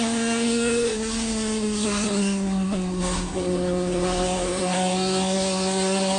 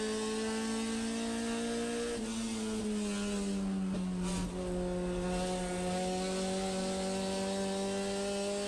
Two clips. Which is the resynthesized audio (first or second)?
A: first